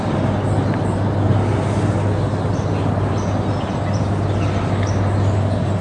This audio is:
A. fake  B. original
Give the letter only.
B